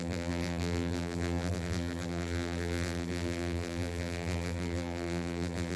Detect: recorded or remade remade